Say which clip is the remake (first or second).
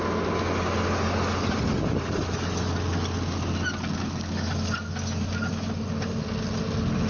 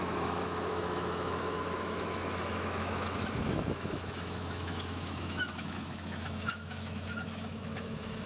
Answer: second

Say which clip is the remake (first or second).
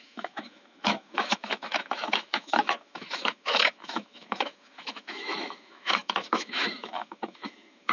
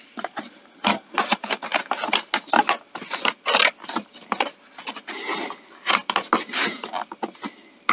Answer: first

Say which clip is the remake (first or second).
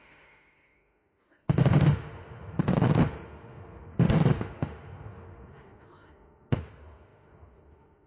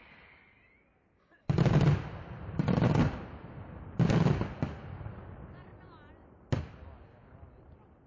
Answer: first